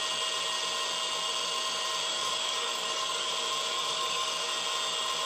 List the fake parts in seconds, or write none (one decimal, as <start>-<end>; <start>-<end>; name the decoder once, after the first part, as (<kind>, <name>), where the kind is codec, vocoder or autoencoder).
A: 2.1-3.3 (codec, DAC); 3.7-4.3